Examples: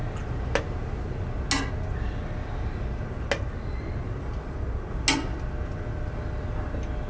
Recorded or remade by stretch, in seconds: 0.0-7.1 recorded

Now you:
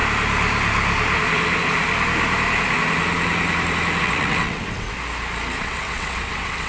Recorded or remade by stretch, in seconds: 0.0-4.0 recorded; 4.0-4.9 remade; 4.9-5.6 recorded; 5.6-6.7 remade

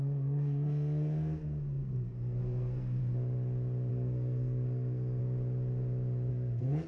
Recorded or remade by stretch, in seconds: 0.0-3.0 remade; 3.0-3.9 recorded; 3.9-5.2 remade; 5.2-6.3 recorded; 6.3-6.9 remade

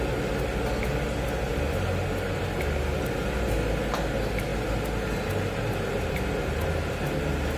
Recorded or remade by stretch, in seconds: 0.0-7.6 recorded

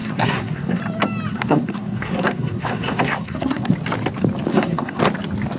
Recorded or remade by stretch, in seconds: 0.0-0.8 remade; 0.8-1.3 recorded; 1.3-3.7 remade; 3.7-4.5 recorded; 4.5-5.0 remade; 5.0-5.6 recorded

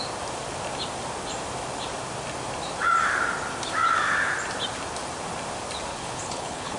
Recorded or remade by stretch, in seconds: 0.0-5.9 recorded; 5.9-6.8 remade

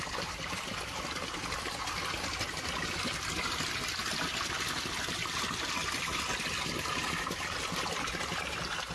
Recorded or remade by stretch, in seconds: 0.0-8.9 recorded

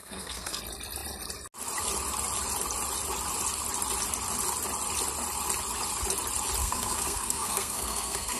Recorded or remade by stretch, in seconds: 0.0-0.6 remade; 0.6-6.6 recorded; 6.6-8.4 remade